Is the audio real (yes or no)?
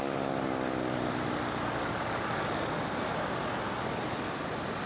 yes